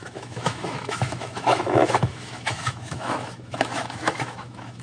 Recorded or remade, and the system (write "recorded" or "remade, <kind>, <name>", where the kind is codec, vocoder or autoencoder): remade, autoencoder, DAC-VAE